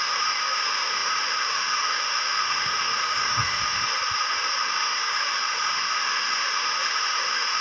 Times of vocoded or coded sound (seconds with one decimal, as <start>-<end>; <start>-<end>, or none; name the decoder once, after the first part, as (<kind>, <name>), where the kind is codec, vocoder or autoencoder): 0.0-3.9 (autoencoder, DAC-VAE); 4.7-7.6